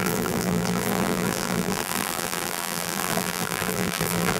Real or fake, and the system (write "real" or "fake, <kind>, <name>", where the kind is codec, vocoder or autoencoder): fake, vocoder, BigVGAN v2